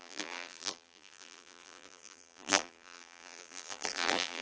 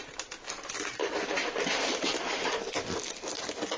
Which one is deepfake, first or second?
first